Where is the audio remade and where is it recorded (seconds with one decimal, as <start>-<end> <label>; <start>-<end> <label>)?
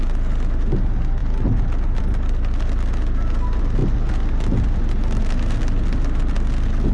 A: 0.0-6.9 recorded